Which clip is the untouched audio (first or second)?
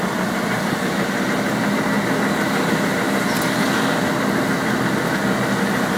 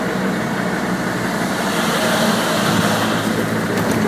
first